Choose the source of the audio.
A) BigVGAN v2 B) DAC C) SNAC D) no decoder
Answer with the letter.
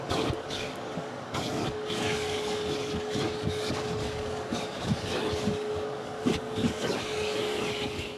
B